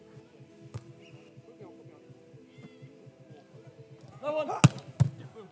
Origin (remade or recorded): recorded